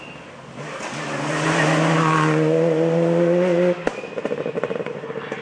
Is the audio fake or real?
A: real